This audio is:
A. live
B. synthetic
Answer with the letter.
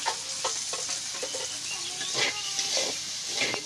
A